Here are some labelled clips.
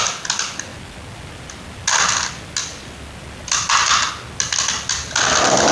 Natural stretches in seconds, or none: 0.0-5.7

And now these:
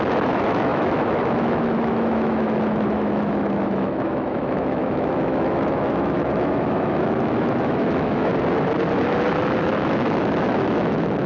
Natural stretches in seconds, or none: 8.3-9.6

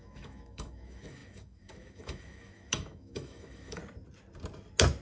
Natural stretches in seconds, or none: 3.8-5.0